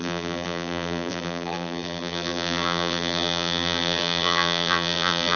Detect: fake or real fake